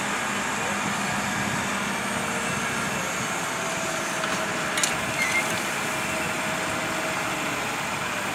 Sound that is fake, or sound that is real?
real